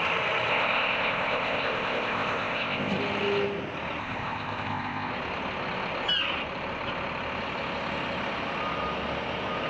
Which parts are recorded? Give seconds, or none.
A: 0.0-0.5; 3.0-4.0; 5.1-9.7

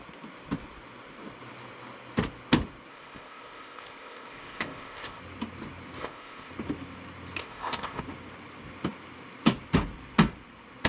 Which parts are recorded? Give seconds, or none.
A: 0.0-2.9; 5.2-6.0; 6.5-7.4; 8.0-10.9

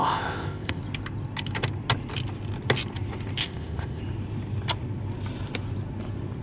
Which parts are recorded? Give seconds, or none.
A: 0.8-3.4; 4.0-6.4

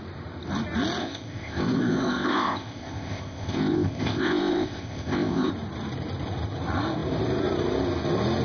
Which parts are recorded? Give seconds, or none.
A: 0.0-1.0; 5.5-8.4

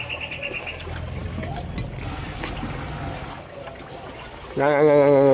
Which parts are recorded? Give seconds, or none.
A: 0.0-5.3

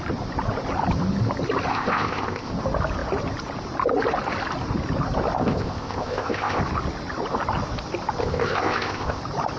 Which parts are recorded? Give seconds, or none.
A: 0.0-1.7; 2.5-5.4; 6.6-8.2; 9.2-9.6

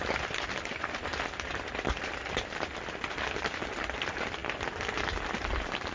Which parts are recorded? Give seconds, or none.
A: 0.0-5.9

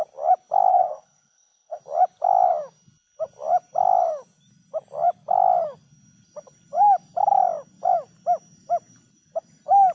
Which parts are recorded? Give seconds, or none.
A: 0.0-0.7; 1.8-9.9